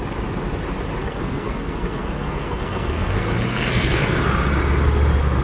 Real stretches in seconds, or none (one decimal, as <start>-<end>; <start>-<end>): 0.0-1.0; 4.2-5.4